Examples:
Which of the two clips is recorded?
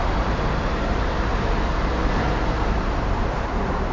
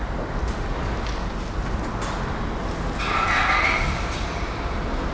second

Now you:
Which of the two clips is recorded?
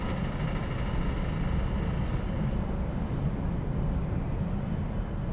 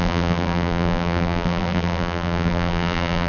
first